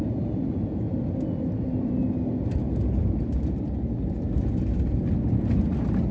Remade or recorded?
recorded